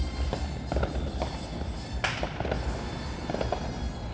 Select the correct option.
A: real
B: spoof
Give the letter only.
A